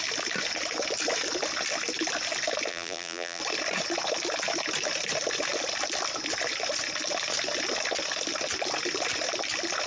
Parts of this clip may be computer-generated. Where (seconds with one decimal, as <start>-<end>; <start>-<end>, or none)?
2.7-3.4